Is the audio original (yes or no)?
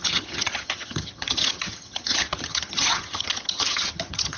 no